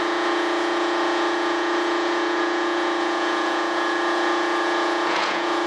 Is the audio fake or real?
fake